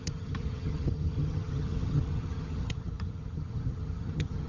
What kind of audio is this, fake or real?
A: fake